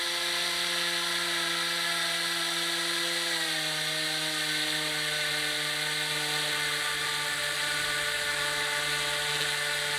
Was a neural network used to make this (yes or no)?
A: no